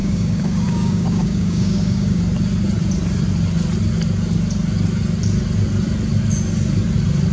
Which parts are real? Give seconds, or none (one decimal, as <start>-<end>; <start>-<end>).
2.2-7.3